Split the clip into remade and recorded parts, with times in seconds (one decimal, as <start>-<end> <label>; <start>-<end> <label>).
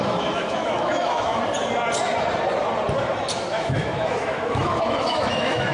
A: 0.0-1.4 remade; 1.4-3.5 recorded; 3.5-5.7 remade